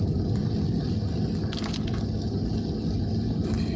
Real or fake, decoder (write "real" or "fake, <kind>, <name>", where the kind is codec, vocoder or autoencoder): real